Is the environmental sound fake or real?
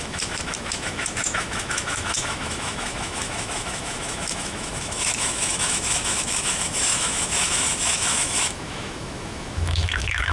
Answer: fake